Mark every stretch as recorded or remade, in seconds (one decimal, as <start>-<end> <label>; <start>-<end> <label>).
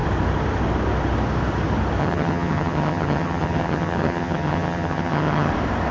0.0-2.0 recorded; 2.0-5.5 remade; 5.5-5.9 recorded